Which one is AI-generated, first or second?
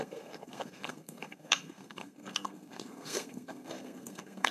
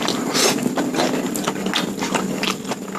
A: first